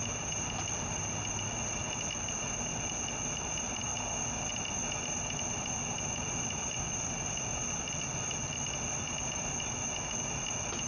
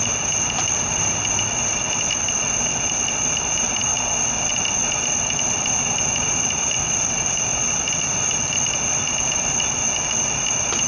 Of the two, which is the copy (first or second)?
second